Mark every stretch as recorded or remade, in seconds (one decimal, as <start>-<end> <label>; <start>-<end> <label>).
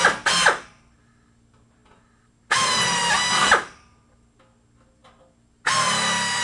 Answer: 0.0-6.4 recorded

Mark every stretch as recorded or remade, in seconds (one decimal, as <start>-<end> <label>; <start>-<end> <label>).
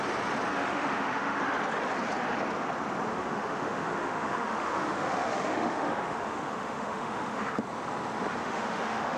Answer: 0.0-0.6 recorded; 0.6-1.4 remade; 1.4-3.1 recorded; 3.1-7.6 remade; 7.6-8.4 recorded; 8.4-9.2 remade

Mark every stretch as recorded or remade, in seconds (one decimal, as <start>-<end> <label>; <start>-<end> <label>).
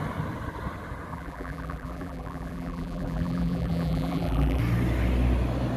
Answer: 0.0-1.1 recorded; 1.1-4.6 remade; 4.6-5.8 recorded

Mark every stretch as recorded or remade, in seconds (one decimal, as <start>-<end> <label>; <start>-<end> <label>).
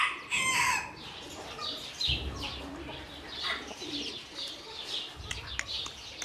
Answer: 0.0-6.2 recorded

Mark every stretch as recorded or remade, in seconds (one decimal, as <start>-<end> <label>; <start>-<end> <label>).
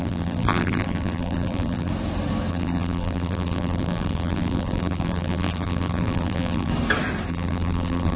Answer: 0.0-1.9 remade; 1.9-2.5 recorded; 2.5-6.7 remade; 6.7-7.3 recorded; 7.3-8.2 remade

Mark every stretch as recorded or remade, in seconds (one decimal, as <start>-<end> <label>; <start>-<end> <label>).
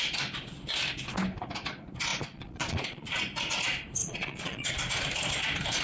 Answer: 0.0-2.1 recorded; 2.1-3.2 remade; 3.2-4.0 recorded; 4.0-4.7 remade; 4.7-5.8 recorded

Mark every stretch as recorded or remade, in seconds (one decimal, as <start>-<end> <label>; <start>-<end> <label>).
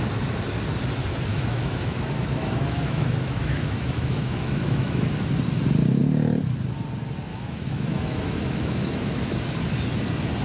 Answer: 0.0-1.3 recorded; 1.3-5.1 remade; 5.1-7.3 recorded; 7.3-9.4 remade; 9.4-10.4 recorded